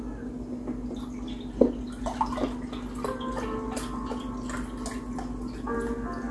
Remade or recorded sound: recorded